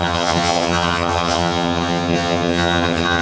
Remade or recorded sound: remade